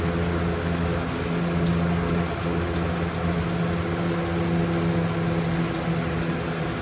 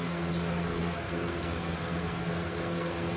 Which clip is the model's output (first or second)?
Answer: second